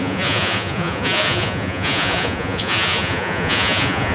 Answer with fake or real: fake